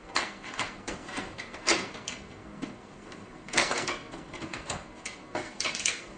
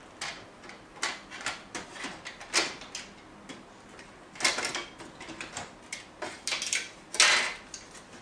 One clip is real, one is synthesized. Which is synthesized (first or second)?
first